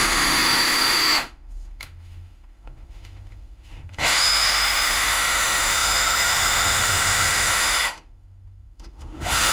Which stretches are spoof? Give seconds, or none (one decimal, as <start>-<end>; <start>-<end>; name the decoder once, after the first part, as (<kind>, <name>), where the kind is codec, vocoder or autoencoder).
0.0-9.5 (autoencoder, DAC-VAE)